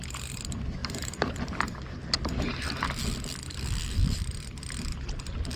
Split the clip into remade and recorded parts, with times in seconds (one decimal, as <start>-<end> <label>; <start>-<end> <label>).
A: 0.0-0.8 recorded; 0.8-1.4 remade; 1.4-4.0 recorded; 4.0-4.9 remade; 4.9-5.6 recorded